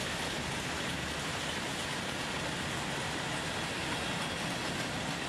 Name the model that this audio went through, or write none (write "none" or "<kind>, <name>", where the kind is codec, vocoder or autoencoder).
none